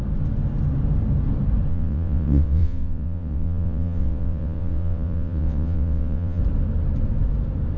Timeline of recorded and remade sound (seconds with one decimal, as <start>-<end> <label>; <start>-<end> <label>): 0.0-1.7 recorded; 1.7-6.4 remade; 6.4-7.8 recorded